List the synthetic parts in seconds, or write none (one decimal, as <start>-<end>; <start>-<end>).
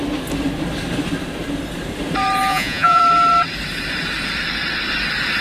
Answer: 2.5-3.0